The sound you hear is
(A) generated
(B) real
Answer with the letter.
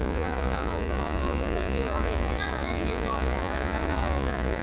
A